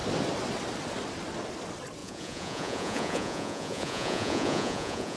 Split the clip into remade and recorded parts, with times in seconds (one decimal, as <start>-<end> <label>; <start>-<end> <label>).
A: 0.0-2.0 recorded; 2.0-5.2 remade